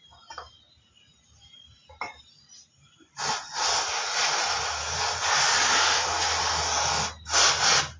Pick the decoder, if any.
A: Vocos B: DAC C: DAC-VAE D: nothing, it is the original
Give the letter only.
D